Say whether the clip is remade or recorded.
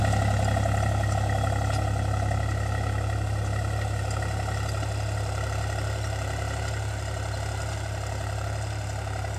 recorded